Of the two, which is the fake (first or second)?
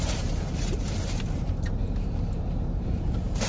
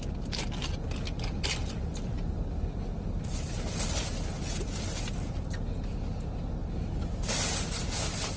first